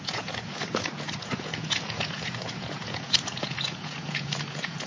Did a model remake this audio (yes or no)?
yes